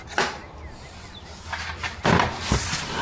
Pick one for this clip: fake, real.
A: real